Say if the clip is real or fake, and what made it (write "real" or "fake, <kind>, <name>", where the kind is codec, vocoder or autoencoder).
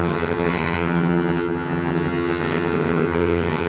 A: fake, vocoder, HiFi-GAN